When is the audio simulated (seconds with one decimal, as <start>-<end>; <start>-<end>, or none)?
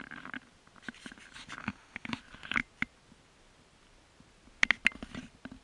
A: 1.6-2.2